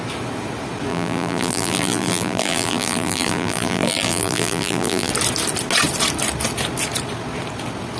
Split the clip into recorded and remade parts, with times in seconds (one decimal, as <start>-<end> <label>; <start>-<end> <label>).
0.0-0.9 recorded; 0.9-5.1 remade; 5.1-8.0 recorded